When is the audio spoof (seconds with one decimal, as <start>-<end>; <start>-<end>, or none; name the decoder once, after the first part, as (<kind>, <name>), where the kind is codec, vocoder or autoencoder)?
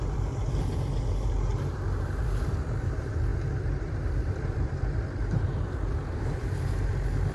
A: 0.0-1.5 (vocoder, BigVGAN v2); 2.2-7.3